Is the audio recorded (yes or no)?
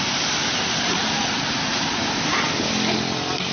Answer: yes